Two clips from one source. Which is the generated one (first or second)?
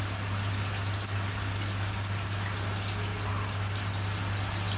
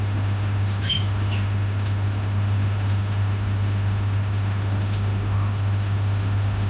second